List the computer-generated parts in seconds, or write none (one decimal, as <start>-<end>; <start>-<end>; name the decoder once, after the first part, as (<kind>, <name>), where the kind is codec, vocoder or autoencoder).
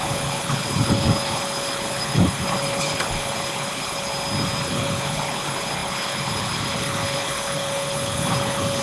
0.0-4.1 (codec, HILCodec); 4.6-8.8